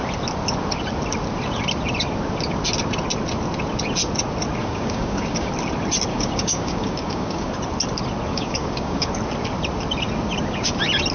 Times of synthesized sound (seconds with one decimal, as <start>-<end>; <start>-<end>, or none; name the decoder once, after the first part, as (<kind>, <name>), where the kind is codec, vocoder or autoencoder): 4.6-5.5 (codec, DAC); 6.1-7.5; 8.3-9.1